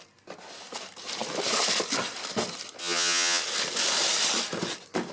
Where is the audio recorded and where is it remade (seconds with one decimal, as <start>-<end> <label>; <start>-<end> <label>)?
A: 0.0-2.8 recorded; 2.8-3.4 remade; 3.4-5.1 recorded

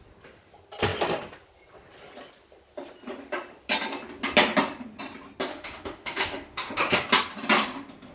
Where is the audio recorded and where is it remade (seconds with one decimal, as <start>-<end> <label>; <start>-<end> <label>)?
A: 0.0-5.5 recorded; 5.5-7.0 remade; 7.0-8.1 recorded

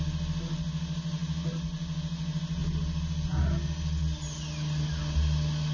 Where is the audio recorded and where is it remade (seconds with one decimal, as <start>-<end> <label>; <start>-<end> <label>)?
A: 0.0-5.7 recorded

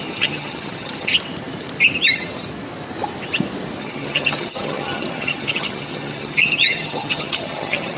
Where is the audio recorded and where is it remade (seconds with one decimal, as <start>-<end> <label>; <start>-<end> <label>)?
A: 0.0-1.1 remade; 1.1-3.8 recorded; 3.8-8.0 remade

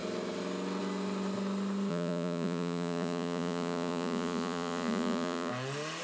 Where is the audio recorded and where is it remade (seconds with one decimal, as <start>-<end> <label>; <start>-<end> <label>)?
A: 0.0-1.9 recorded; 1.9-5.5 remade; 5.5-6.0 recorded

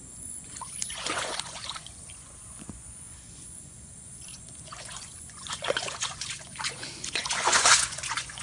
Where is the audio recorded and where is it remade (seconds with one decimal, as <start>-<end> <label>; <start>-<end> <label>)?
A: 0.0-8.4 remade